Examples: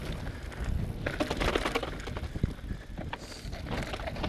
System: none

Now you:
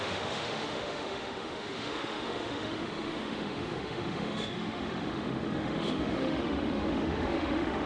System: autoencoder, DAC-VAE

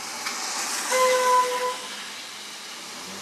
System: none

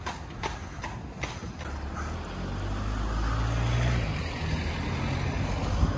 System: none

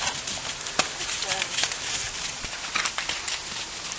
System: none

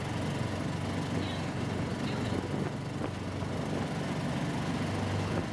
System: none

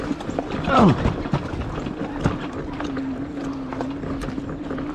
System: none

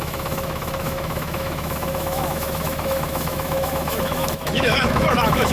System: autoencoder, DAC-VAE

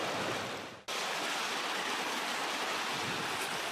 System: none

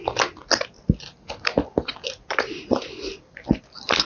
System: none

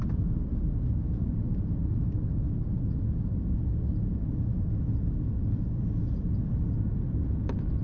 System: none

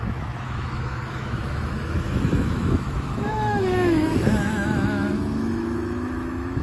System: autoencoder, DAC-VAE